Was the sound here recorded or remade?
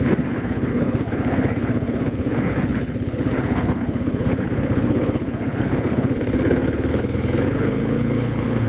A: remade